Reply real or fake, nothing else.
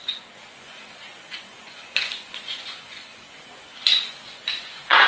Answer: fake